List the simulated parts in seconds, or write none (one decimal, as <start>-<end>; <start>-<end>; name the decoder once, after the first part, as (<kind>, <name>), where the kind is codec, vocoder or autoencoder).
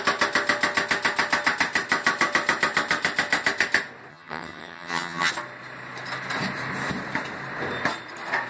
4.1-5.3 (vocoder, HiFi-GAN)